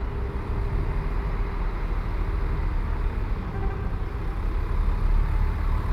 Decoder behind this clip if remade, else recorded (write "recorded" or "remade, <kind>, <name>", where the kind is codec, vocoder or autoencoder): recorded